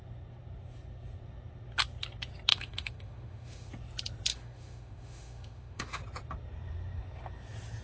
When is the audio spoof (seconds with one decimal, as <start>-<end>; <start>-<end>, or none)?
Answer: 2.5-3.7; 4.3-6.0